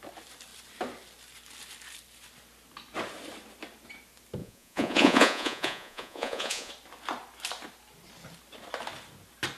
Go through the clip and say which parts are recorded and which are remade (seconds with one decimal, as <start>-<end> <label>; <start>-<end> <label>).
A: 0.0-4.4 recorded; 4.4-6.7 remade; 6.7-9.6 recorded